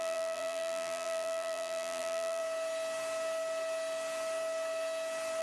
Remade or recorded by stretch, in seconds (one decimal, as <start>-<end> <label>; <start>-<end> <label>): 0.0-2.4 remade; 2.4-5.4 recorded